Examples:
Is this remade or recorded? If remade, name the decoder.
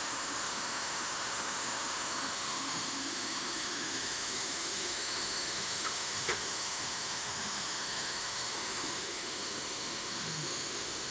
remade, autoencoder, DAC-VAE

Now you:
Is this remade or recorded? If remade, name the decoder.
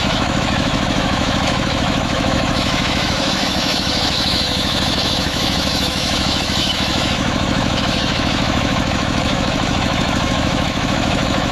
remade, autoencoder, DAC-VAE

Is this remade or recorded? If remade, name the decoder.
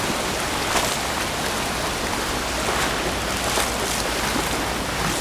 recorded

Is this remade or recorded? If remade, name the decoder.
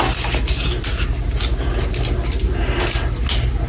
recorded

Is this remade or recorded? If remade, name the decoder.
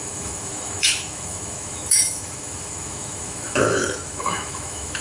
remade, autoencoder, DAC-VAE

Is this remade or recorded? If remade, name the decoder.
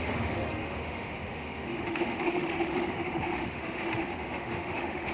remade, autoencoder, DAC-VAE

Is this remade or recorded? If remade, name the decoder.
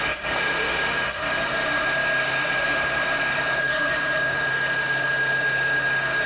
remade, autoencoder, DAC-VAE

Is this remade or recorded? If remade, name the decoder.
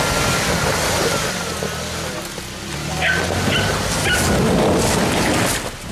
recorded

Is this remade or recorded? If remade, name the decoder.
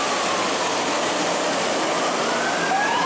recorded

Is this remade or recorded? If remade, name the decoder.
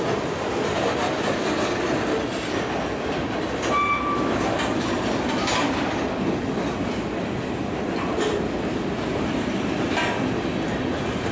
recorded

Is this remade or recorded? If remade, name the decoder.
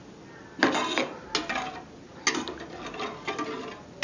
recorded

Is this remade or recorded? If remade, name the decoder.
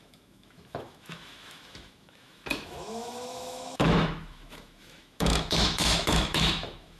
remade, autoencoder, DAC-VAE